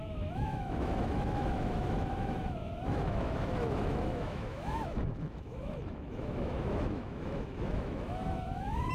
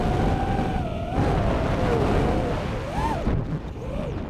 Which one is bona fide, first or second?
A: second